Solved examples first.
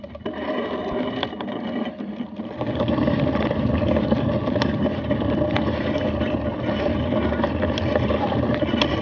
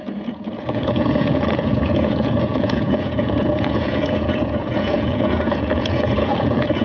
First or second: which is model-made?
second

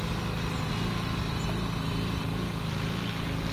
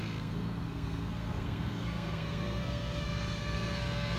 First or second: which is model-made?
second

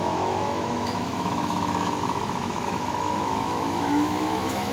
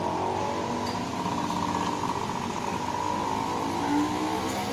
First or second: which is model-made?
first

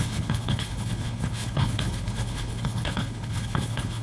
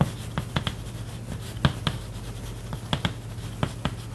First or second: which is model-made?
first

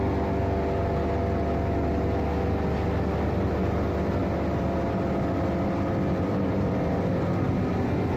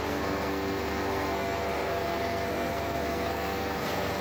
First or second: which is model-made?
second